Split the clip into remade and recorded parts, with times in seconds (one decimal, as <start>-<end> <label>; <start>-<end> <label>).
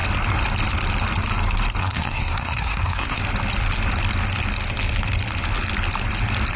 0.0-1.8 recorded; 1.8-3.2 remade; 3.2-6.6 recorded